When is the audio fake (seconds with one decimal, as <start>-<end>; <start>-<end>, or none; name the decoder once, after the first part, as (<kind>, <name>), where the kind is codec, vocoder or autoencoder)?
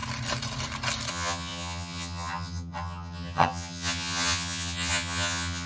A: 1.1-5.7 (vocoder, HiFi-GAN)